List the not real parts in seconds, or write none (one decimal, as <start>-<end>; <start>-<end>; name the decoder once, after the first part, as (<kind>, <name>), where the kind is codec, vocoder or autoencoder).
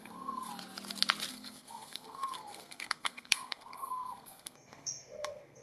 0.0-0.5 (codec, SNAC); 1.3-5.6